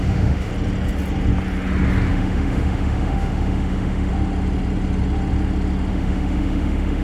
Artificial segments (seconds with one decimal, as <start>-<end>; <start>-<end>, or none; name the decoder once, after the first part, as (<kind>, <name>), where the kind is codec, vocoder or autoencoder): 0.0-0.5 (autoencoder, DAC-VAE); 2.1-4.1; 5.9-7.0